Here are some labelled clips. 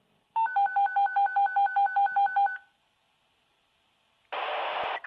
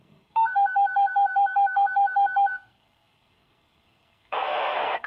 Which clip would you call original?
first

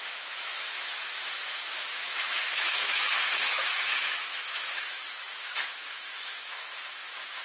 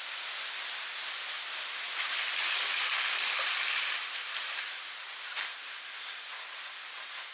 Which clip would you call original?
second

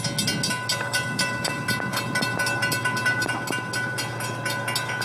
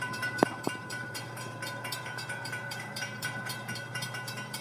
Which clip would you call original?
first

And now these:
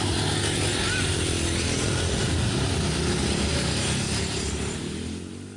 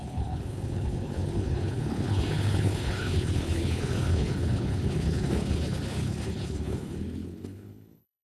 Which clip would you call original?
first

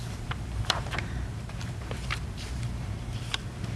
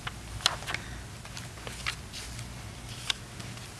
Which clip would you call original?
second